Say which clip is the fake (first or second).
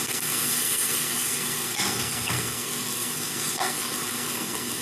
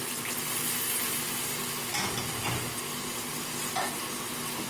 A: first